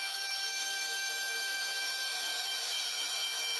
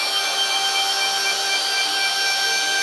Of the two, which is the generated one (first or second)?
first